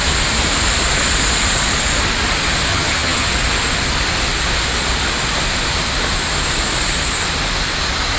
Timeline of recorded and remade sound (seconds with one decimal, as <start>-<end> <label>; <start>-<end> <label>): 0.0-2.7 recorded; 2.7-3.3 remade; 3.3-8.2 recorded

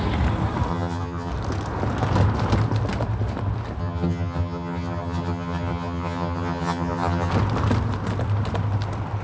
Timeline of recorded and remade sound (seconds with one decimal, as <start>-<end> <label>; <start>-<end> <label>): 0.0-0.7 recorded; 0.7-1.3 remade; 1.3-3.8 recorded; 3.8-7.3 remade; 7.3-9.2 recorded